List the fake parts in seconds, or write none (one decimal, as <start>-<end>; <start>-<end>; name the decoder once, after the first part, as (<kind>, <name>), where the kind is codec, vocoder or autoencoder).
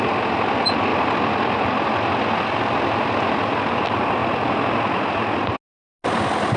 none